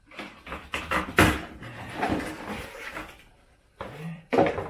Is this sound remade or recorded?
remade